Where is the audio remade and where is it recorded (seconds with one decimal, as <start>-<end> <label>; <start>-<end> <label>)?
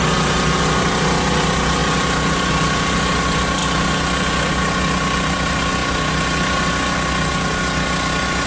0.0-8.5 recorded